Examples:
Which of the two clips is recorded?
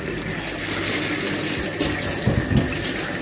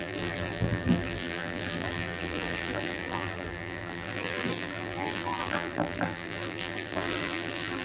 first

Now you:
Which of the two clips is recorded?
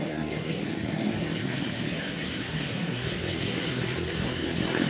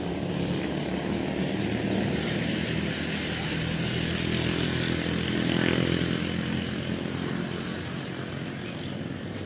second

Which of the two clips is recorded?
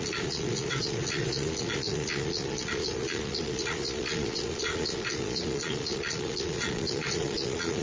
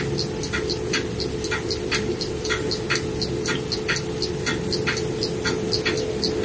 second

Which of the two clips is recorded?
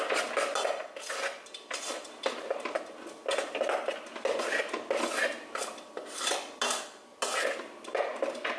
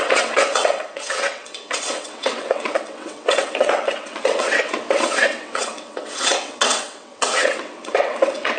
first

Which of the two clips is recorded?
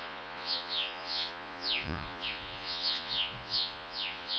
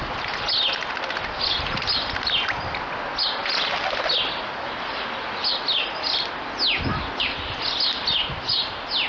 second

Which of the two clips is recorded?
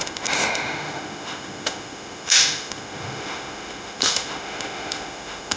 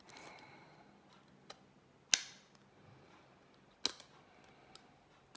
second